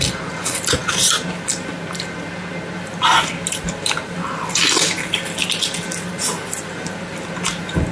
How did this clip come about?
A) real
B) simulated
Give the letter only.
A